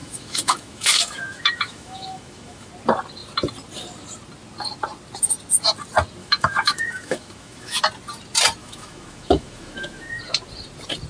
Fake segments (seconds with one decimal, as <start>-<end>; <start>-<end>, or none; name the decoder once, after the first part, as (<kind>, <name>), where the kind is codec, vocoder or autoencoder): 0.0-2.7 (autoencoder, DAC-VAE); 6.2-7.8; 8.6-10.2